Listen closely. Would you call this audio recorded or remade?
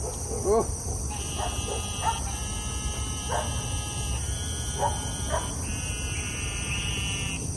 recorded